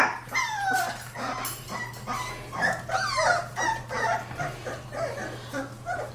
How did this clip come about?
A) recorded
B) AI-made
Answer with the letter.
A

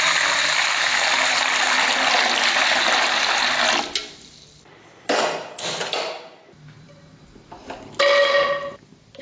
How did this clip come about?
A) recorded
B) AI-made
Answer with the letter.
A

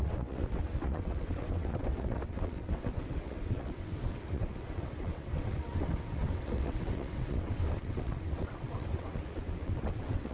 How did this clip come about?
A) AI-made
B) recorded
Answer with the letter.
A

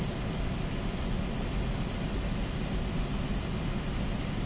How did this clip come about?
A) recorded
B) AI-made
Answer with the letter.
B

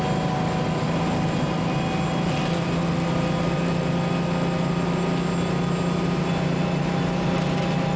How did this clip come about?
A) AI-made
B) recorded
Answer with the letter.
B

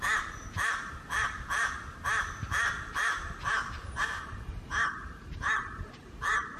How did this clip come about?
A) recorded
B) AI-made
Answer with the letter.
B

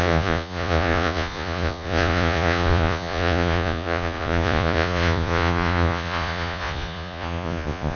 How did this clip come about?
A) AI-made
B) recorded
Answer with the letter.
A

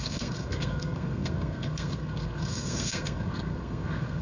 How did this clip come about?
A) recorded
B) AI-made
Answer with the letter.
B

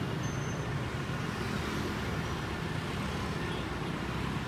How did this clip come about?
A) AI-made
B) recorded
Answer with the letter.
B